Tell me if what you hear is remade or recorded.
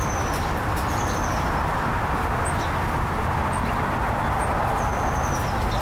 recorded